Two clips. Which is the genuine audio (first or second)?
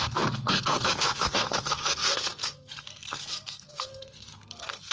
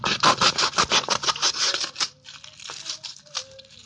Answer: second